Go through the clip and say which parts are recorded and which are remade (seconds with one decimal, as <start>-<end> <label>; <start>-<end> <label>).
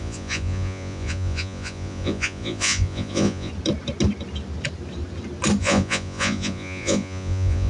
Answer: 0.0-3.5 remade; 3.5-5.6 recorded; 5.6-7.7 remade